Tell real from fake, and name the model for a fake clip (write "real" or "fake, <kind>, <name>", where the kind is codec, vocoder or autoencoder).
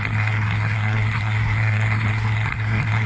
fake, codec, SNAC